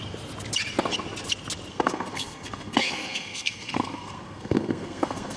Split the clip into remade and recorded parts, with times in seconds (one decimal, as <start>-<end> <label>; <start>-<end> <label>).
0.0-1.7 recorded; 1.7-5.4 remade